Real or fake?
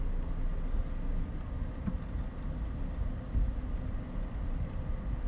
real